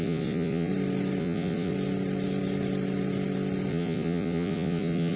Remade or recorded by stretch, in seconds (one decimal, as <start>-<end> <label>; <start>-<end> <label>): 0.0-0.7 remade; 0.7-1.2 recorded; 1.2-1.7 remade; 1.7-3.7 recorded; 3.7-5.2 remade